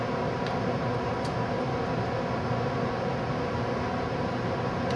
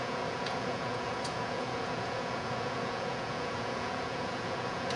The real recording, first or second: first